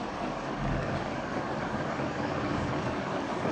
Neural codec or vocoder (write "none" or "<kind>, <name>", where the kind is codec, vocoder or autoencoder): codec, DAC